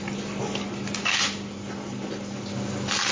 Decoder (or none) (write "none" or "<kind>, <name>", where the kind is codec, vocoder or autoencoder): none